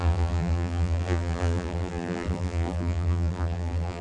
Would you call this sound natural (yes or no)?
no